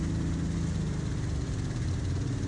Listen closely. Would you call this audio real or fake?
real